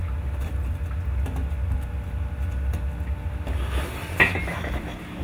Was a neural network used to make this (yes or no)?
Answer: no